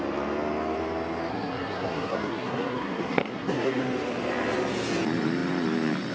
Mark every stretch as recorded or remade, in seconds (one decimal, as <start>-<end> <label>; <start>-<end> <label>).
0.0-1.3 recorded; 1.3-3.8 remade; 3.8-6.1 recorded